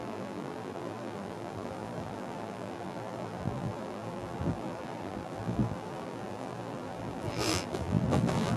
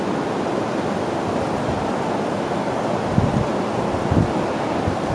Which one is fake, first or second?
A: first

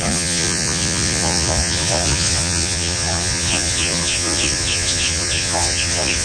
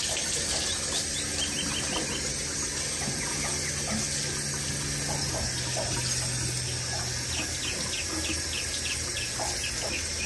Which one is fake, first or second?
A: first